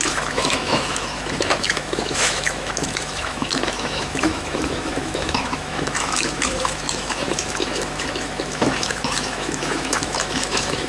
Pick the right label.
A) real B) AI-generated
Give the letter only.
B